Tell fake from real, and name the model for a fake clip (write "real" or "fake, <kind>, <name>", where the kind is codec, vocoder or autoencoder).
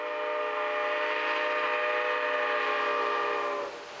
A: real